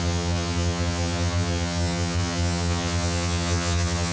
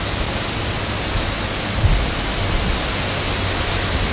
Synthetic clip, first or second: first